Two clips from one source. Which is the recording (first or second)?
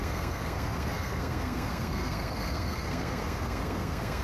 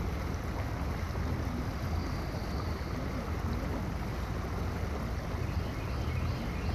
second